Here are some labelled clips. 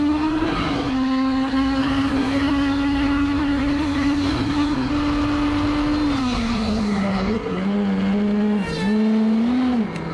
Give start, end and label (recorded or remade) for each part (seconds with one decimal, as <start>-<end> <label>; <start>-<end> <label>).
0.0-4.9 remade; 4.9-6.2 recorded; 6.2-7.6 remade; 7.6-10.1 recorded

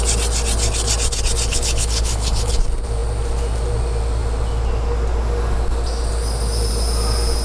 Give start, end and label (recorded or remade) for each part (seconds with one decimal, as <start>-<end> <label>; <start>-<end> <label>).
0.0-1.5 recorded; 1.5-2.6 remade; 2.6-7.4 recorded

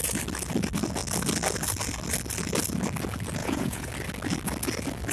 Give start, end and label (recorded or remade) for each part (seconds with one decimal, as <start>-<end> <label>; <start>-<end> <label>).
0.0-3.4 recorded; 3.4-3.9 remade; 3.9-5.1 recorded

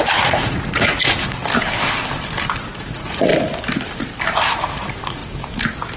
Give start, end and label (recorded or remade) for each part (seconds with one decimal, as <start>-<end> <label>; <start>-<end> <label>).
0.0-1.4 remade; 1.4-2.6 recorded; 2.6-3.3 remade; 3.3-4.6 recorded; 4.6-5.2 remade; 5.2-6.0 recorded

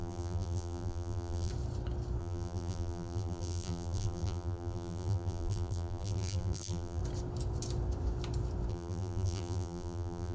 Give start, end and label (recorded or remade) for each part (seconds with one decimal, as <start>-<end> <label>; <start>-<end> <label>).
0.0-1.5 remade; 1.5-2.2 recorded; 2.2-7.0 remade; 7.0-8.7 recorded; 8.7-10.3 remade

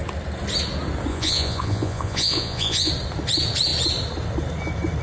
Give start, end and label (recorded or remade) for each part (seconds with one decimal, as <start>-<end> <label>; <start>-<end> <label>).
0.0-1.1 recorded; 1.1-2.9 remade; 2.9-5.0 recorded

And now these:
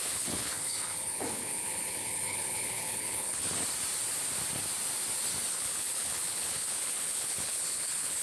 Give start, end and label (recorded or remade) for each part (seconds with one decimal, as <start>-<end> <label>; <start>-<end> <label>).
0.0-3.4 remade; 3.4-5.5 recorded; 5.5-8.2 remade